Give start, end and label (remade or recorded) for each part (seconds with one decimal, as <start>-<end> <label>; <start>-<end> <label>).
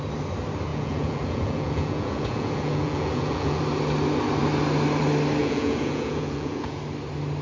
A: 0.0-0.7 recorded; 0.7-3.6 remade; 3.6-5.4 recorded; 5.4-6.8 remade; 6.8-7.4 recorded